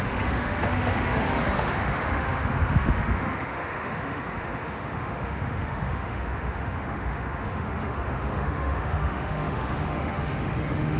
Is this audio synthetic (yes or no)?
yes